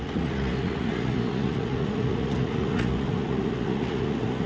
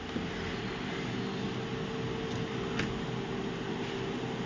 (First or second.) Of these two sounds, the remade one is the first